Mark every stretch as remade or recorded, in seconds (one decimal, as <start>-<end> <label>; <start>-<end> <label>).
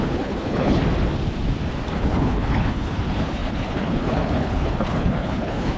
0.0-0.8 remade; 0.8-1.9 recorded; 1.9-5.8 remade